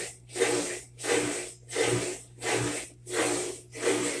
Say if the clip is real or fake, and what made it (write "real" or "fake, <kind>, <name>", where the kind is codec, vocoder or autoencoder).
real